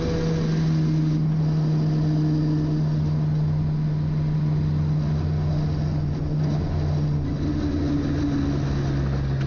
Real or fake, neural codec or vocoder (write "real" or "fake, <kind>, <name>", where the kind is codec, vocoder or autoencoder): real